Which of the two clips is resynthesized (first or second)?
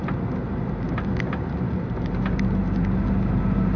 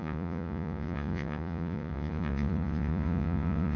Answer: second